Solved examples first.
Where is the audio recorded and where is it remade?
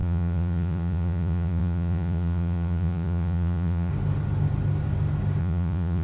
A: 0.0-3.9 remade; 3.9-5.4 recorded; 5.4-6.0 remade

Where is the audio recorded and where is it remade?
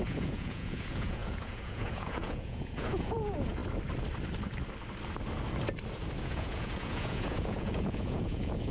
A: 0.0-3.6 remade; 3.6-6.2 recorded; 6.2-8.7 remade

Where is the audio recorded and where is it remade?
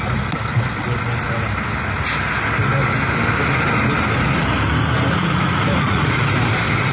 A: 0.0-5.2 recorded; 5.2-6.2 remade; 6.2-6.9 recorded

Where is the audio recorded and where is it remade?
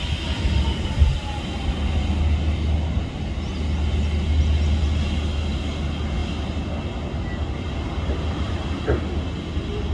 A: 0.0-9.9 recorded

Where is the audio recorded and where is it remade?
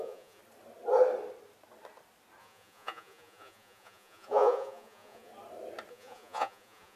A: 0.0-0.4 remade; 0.4-2.4 recorded; 2.4-5.3 remade; 5.3-5.9 recorded; 5.9-7.0 remade